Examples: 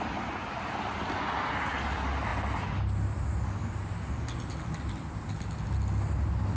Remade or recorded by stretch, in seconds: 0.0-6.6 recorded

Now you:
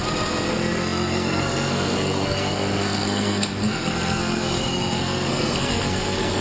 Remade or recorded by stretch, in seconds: 0.0-0.5 recorded; 0.5-6.4 remade

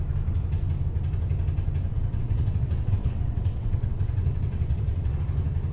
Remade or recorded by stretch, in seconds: 0.0-1.9 recorded; 1.9-5.2 remade; 5.2-5.7 recorded

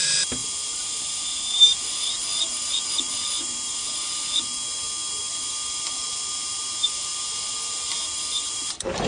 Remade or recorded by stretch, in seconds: 0.0-4.5 remade; 4.5-5.3 recorded; 5.3-9.1 remade

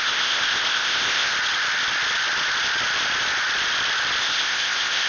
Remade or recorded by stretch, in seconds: 0.0-1.3 remade; 1.3-4.2 recorded; 4.2-5.1 remade

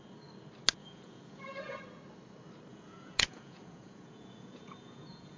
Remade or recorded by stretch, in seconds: 0.0-0.8 recorded; 0.8-1.8 remade; 1.8-2.7 recorded; 2.7-5.4 remade